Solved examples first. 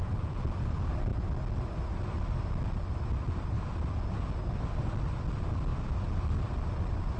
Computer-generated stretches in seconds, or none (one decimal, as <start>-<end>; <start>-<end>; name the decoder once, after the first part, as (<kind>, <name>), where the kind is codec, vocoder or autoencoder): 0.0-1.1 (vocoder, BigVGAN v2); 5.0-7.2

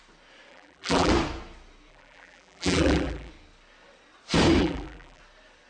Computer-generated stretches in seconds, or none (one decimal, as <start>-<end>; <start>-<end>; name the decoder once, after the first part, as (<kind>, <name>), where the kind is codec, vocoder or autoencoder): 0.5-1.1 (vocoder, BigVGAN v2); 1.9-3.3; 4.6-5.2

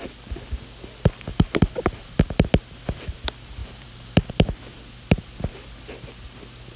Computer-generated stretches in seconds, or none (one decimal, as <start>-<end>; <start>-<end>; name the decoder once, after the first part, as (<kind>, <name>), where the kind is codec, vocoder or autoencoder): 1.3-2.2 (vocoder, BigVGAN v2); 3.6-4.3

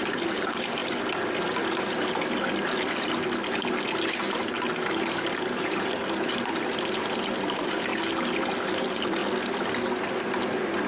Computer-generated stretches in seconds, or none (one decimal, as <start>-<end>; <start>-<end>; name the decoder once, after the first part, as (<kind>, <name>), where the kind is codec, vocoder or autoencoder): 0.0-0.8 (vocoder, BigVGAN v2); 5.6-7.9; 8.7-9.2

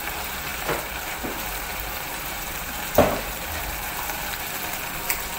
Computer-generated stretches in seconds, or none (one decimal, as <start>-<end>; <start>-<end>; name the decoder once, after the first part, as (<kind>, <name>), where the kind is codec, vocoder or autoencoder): 0.0-4.2 (vocoder, BigVGAN v2)

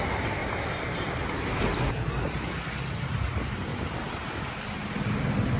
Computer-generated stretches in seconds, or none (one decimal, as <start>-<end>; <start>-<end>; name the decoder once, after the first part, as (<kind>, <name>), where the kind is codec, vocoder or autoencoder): 0.4-1.1 (vocoder, BigVGAN v2); 3.7-4.5

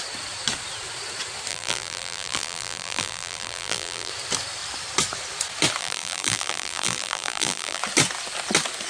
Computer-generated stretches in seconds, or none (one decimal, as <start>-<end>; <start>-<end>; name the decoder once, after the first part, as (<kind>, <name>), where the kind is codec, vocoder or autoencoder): 1.5-4.1 (vocoder, BigVGAN v2); 5.8-7.8

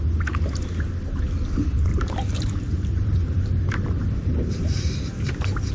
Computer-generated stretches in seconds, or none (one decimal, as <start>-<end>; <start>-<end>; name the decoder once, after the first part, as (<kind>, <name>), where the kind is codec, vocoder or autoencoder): 1.9-5.3 (vocoder, BigVGAN v2)